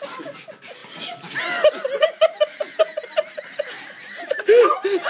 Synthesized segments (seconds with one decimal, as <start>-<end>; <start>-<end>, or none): none